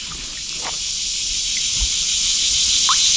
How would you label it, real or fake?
real